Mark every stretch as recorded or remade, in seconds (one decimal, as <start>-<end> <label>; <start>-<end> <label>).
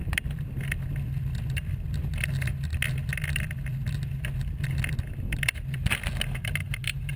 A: 0.0-7.2 recorded